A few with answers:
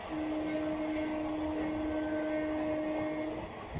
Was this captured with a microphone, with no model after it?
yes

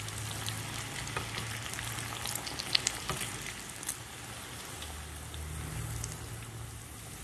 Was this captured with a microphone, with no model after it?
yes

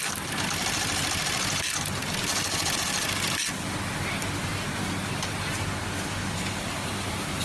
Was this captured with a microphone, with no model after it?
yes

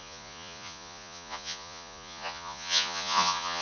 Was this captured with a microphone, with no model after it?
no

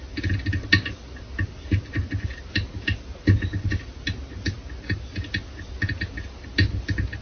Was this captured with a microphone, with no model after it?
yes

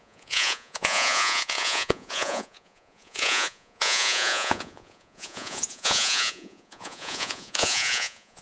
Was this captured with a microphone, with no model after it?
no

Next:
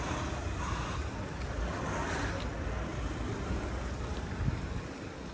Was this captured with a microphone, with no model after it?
yes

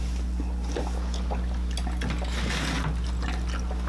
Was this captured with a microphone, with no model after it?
yes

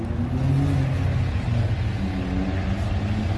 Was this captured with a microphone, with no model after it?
yes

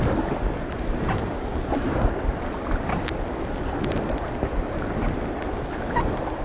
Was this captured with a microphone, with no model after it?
yes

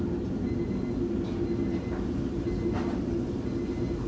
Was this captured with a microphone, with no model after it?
yes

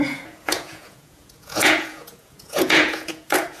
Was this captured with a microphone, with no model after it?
no